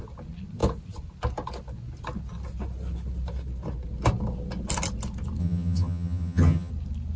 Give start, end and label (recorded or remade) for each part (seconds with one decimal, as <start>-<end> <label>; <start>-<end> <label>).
0.0-5.4 recorded; 5.4-6.7 remade; 6.7-7.2 recorded

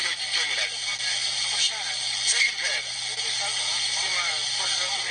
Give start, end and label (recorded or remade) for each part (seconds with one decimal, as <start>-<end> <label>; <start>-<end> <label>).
0.0-1.1 remade; 1.1-5.1 recorded

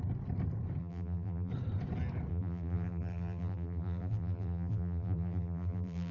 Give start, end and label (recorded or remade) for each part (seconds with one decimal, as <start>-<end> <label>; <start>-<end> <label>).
0.0-0.8 recorded; 0.8-1.5 remade; 1.5-2.3 recorded; 2.3-6.1 remade

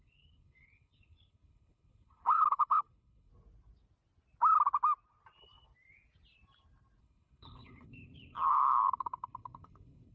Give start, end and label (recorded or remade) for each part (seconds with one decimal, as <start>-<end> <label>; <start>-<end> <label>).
0.0-3.3 remade; 3.3-7.0 recorded; 7.0-10.1 remade

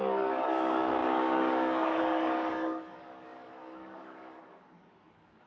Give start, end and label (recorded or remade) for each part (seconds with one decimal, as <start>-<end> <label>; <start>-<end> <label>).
0.0-5.5 remade

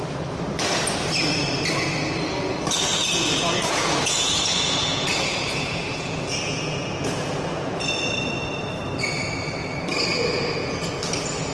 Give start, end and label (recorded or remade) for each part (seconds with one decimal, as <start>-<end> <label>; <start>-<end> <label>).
0.0-3.0 recorded; 3.0-7.8 remade; 7.8-10.1 recorded; 10.1-10.9 remade; 10.9-11.5 recorded

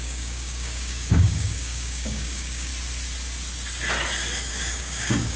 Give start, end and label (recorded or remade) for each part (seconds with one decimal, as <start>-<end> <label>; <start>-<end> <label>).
0.0-2.7 remade; 2.7-4.5 recorded; 4.5-5.4 remade

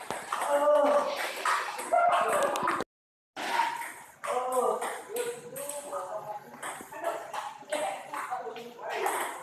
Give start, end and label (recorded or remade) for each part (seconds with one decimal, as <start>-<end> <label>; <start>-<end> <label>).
0.0-9.4 recorded